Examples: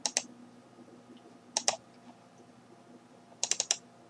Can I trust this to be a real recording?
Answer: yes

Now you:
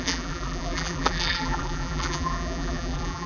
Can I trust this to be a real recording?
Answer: no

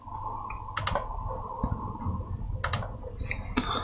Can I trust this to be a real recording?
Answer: yes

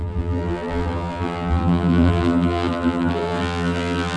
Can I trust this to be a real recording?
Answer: no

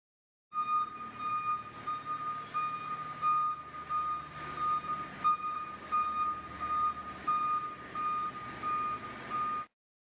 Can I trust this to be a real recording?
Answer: yes